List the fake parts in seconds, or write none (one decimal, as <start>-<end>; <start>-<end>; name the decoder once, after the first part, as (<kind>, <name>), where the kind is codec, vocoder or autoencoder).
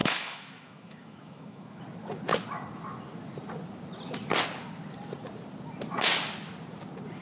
0.0-1.8 (autoencoder, DAC-VAE)